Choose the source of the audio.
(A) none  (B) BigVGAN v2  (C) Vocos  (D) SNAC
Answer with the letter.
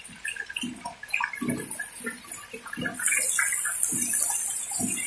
A